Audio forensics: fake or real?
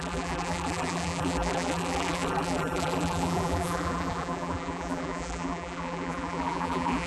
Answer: fake